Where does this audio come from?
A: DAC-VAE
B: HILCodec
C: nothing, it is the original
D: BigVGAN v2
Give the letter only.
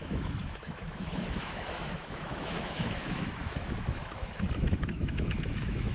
A